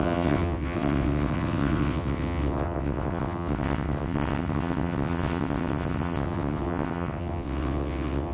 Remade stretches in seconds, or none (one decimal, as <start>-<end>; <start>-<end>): 0.0-8.3